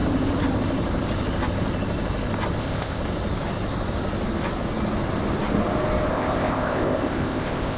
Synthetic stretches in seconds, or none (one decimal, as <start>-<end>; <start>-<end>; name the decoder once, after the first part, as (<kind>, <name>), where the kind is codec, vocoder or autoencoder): 2.6-3.0 (codec, ZipCodec); 6.1-7.8